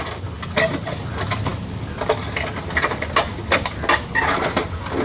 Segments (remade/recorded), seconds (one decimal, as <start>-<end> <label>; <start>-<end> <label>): 0.0-5.0 recorded